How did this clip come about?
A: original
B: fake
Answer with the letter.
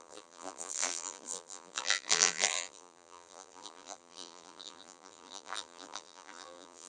B